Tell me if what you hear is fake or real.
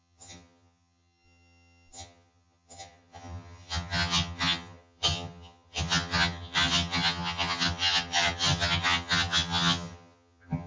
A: fake